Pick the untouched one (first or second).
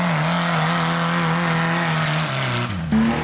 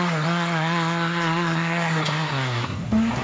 first